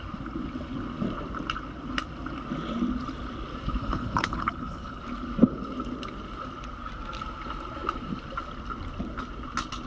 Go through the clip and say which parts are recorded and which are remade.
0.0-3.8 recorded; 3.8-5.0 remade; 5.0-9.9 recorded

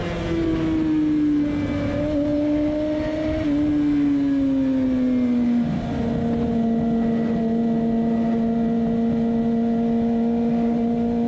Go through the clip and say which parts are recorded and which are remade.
0.0-11.3 recorded